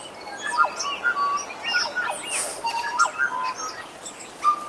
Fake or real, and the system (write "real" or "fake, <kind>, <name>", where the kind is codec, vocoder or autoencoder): real